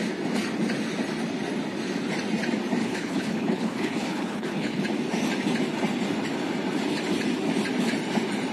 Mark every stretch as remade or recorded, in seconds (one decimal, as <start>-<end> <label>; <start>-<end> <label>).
0.0-2.8 recorded; 2.8-4.8 remade; 4.8-8.5 recorded

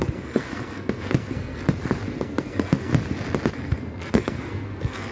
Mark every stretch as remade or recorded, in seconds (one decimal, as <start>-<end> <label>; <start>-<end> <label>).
0.0-1.6 remade; 1.6-2.2 recorded; 2.2-2.9 remade; 2.9-3.5 recorded; 3.5-5.1 remade

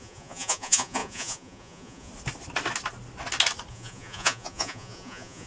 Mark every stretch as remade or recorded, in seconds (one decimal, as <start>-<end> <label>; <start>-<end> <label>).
0.0-2.1 remade; 2.1-3.7 recorded; 3.7-5.5 remade

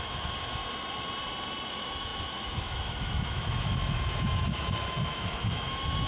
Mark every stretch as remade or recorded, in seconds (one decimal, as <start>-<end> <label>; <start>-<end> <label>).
0.0-0.6 remade; 0.6-1.7 recorded; 1.7-6.1 remade

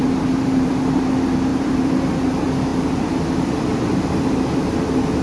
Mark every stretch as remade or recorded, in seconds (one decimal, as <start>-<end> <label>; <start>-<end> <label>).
0.0-0.7 remade; 0.7-1.5 recorded; 1.5-2.0 remade; 2.0-5.2 recorded

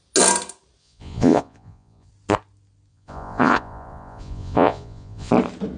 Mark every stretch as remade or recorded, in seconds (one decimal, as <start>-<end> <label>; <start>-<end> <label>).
0.0-0.8 recorded; 0.8-2.1 remade; 2.1-2.9 recorded; 2.9-5.3 remade; 5.3-5.8 recorded

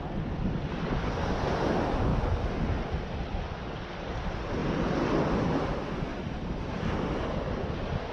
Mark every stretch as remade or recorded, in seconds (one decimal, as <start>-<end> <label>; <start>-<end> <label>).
0.0-6.1 recorded; 6.1-7.1 remade; 7.1-8.1 recorded

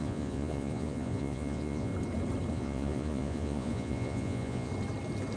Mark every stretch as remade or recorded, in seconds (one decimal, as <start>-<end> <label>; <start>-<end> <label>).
0.0-1.9 remade; 1.9-2.5 recorded; 2.5-4.7 remade; 4.7-5.4 recorded